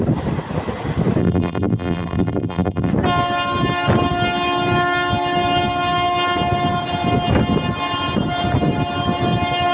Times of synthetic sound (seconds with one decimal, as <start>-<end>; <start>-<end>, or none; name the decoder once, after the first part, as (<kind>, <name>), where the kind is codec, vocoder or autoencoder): 1.2-2.9 (vocoder, BigVGAN v2)